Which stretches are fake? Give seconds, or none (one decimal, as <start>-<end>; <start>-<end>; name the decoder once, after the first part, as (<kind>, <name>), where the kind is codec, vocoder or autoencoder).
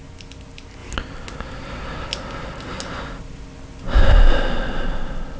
none